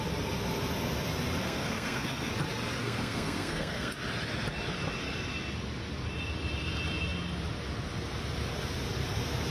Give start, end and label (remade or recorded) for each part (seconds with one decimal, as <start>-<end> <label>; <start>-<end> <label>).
0.0-1.4 recorded; 1.4-2.3 remade; 2.3-2.8 recorded; 2.8-3.9 remade; 3.9-9.5 recorded